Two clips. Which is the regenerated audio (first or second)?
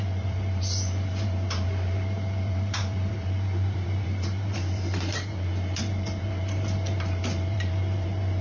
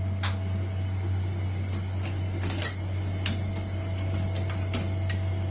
first